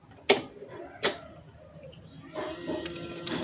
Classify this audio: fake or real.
real